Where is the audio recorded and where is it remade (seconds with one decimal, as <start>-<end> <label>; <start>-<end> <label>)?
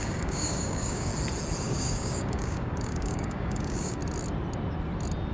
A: 0.0-1.1 remade; 1.1-1.6 recorded; 1.6-4.0 remade; 4.0-5.3 recorded